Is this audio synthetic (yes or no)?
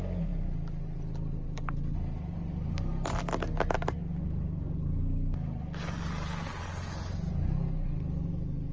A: no